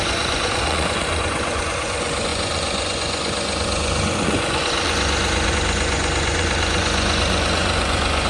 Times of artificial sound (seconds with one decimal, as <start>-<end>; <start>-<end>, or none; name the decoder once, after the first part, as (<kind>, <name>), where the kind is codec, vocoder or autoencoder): 0.0-8.3 (vocoder, Vocos)